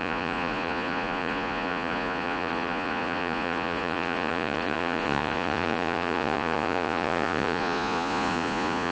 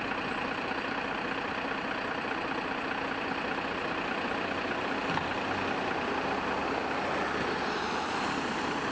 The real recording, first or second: second